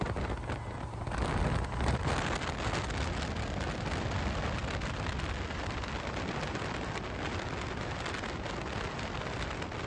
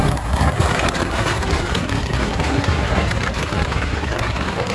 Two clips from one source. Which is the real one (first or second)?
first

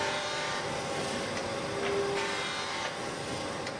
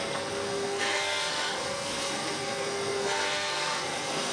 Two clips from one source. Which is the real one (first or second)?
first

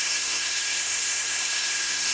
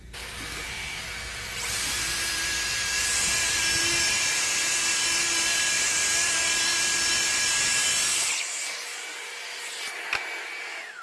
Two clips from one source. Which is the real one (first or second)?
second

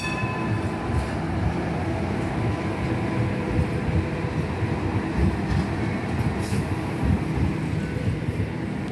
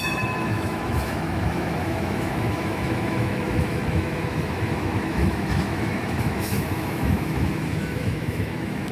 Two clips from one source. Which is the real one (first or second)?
first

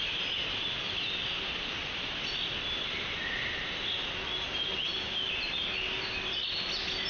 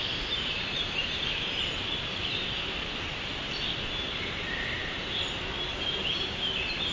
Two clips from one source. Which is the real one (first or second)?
first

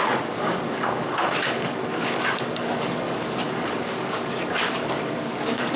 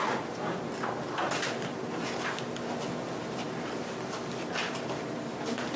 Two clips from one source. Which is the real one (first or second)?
second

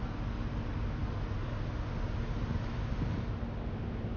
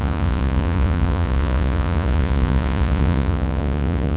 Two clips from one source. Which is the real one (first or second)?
first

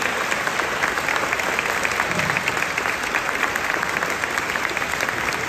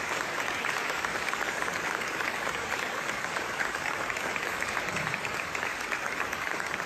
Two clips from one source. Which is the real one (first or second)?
first